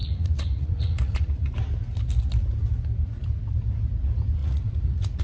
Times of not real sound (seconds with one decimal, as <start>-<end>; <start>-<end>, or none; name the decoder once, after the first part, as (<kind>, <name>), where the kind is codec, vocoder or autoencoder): 0.0-1.5 (vocoder, Vocos); 4.4-5.2